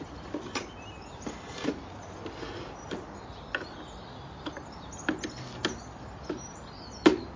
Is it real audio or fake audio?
real